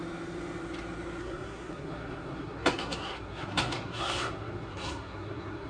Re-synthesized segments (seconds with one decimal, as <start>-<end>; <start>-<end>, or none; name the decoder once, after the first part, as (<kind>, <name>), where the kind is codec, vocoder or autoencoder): 1.2-5.7 (codec, SNAC)